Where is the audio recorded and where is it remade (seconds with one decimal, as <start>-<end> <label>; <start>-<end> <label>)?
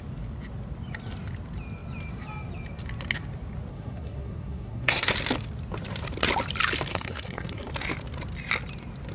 0.0-3.7 recorded; 3.7-5.1 remade; 5.1-6.9 recorded; 6.9-7.7 remade; 7.7-9.1 recorded